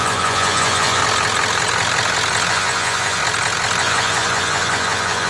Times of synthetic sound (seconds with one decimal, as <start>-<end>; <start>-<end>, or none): 0.0-1.0; 2.5-3.2; 3.8-5.3